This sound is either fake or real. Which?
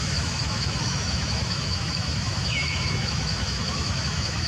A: fake